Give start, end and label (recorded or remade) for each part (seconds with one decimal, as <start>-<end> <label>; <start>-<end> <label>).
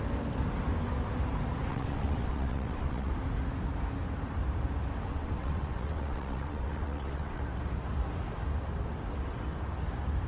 0.0-1.7 recorded; 1.7-3.1 remade; 3.1-5.1 recorded; 5.1-7.4 remade; 7.4-10.3 recorded